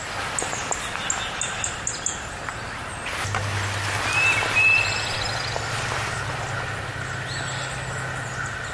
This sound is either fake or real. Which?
real